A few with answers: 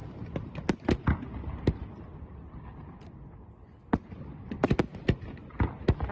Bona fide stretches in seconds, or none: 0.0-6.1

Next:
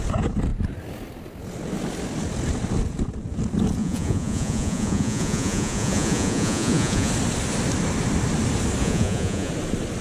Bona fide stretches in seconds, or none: 0.0-3.8; 7.1-8.8; 9.5-10.0

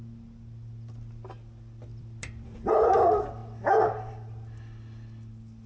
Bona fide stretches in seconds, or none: 0.0-1.9; 2.9-5.7